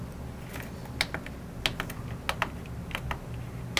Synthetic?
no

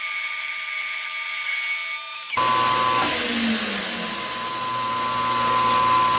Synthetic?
no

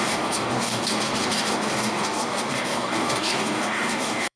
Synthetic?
yes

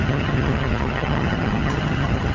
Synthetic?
yes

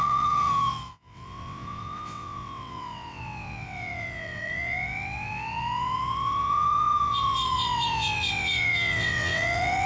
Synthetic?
yes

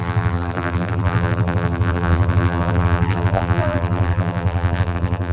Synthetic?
yes